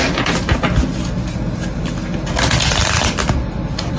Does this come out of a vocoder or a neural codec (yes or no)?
no